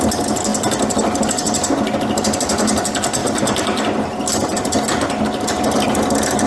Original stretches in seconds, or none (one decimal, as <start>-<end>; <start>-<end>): 0.0-6.5